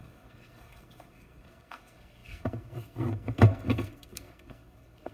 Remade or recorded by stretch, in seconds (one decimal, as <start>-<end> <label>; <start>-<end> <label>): 0.0-5.1 remade